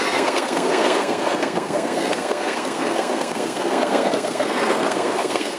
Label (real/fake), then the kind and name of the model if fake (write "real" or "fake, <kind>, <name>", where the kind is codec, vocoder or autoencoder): fake, codec, SNAC